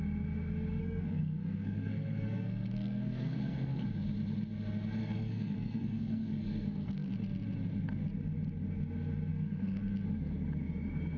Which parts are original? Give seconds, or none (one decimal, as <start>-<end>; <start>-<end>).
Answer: 0.0-0.8; 3.8-5.0; 7.1-9.3; 9.8-11.2